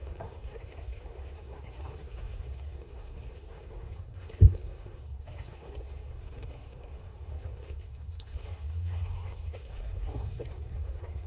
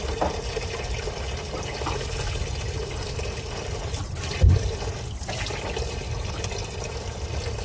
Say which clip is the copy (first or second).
first